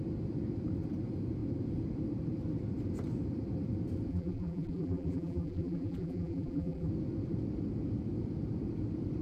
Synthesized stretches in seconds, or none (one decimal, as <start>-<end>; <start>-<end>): 4.1-6.9